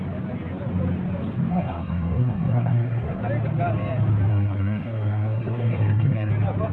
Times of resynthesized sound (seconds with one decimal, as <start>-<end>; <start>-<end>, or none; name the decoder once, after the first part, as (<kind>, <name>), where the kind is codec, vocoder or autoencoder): 1.5-3.2 (codec, SNAC); 4.3-6.3